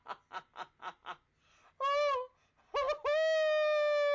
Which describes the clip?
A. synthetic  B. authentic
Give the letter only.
B